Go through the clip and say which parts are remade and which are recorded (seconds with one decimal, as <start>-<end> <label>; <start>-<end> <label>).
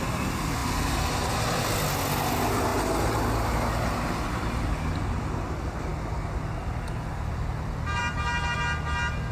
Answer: 0.0-9.3 recorded